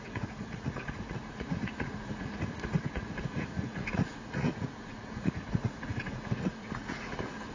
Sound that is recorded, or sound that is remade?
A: remade